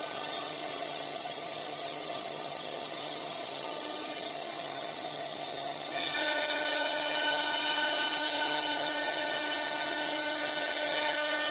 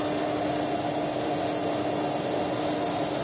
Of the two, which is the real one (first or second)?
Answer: second